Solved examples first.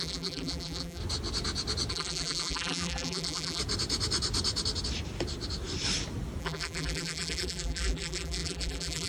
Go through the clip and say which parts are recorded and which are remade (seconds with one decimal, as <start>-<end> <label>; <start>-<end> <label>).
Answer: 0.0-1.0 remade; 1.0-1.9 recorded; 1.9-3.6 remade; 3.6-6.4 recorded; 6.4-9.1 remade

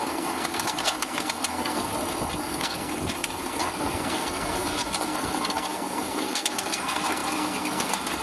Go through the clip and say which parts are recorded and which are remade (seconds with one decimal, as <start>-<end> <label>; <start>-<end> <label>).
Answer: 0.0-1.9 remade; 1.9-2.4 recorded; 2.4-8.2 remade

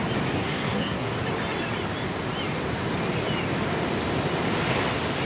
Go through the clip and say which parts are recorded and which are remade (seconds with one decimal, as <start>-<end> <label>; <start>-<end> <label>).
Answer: 0.0-0.4 recorded; 0.4-1.1 remade; 1.1-5.2 recorded

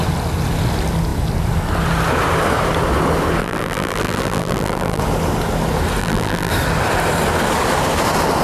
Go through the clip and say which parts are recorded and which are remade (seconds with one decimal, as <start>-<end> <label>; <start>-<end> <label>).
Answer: 0.0-3.4 recorded; 3.4-5.0 remade; 5.0-6.0 recorded; 6.0-6.5 remade; 6.5-8.4 recorded